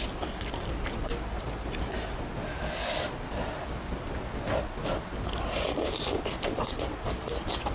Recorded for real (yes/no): yes